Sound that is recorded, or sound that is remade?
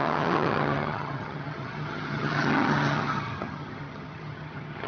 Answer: remade